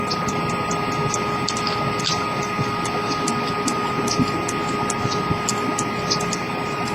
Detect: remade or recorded recorded